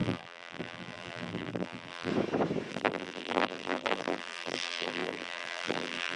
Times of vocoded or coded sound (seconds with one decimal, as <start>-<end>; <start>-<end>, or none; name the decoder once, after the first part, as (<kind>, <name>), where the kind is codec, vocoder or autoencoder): 0.0-2.1 (vocoder, BigVGAN v2); 2.7-6.2